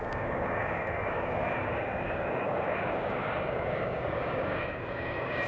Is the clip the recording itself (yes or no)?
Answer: no